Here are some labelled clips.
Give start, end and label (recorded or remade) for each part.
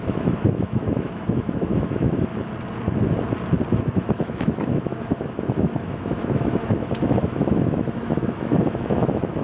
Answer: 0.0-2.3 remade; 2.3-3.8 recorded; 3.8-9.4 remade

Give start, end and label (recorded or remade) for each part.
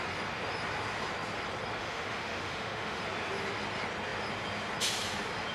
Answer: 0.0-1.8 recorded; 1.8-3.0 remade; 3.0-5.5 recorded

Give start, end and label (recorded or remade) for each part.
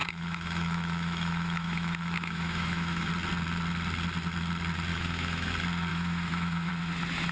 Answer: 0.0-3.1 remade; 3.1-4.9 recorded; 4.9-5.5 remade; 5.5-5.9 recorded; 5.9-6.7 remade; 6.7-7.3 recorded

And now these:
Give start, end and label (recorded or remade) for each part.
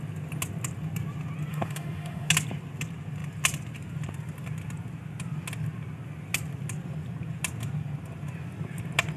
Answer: 0.0-1.5 recorded; 1.5-2.3 remade; 2.3-9.2 recorded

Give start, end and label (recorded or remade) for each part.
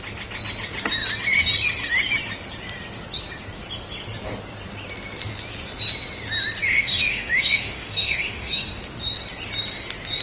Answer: 0.0-6.7 recorded; 6.7-8.7 remade; 8.7-10.2 recorded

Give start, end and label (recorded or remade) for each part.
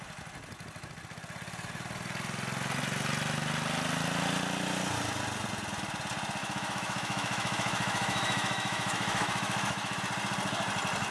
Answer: 0.0-6.4 recorded; 6.4-10.0 remade; 10.0-11.1 recorded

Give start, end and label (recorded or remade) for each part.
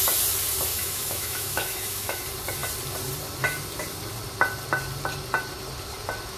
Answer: 0.0-0.7 recorded; 0.7-2.2 remade; 2.2-6.4 recorded